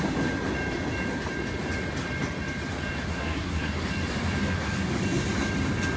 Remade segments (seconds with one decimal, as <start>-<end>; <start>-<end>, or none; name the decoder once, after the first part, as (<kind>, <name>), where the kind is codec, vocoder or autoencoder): 3.1-3.7 (codec, SNAC)